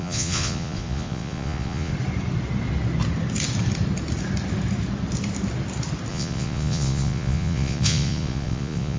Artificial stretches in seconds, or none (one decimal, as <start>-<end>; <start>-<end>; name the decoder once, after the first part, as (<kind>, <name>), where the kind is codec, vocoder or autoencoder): 0.0-1.9 (vocoder, Vocos); 6.1-9.0